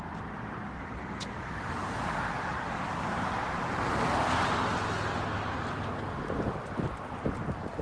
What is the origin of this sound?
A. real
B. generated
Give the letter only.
A